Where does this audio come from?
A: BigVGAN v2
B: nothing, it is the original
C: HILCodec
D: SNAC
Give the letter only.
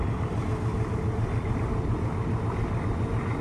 B